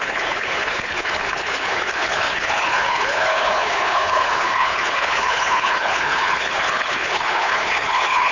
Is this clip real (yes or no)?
no